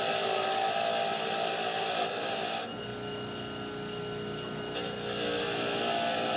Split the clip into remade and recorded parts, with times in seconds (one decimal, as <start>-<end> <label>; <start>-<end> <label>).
0.0-6.4 recorded